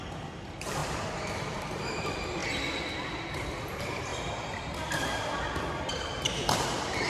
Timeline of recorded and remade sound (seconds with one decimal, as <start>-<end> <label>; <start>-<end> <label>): 0.0-2.4 remade; 2.4-3.6 recorded; 3.6-4.1 remade; 4.1-5.9 recorded; 5.9-7.1 remade